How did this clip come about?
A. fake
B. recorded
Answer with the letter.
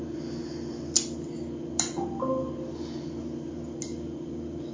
B